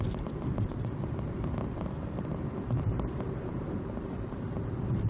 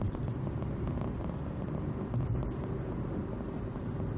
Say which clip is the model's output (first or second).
first